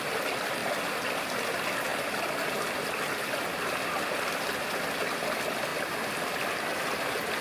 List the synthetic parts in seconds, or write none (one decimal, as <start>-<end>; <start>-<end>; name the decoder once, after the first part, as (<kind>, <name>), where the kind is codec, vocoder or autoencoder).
5.7-6.6 (vocoder, BigVGAN v2)